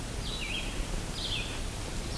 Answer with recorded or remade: recorded